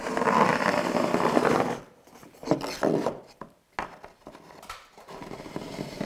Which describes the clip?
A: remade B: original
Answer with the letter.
B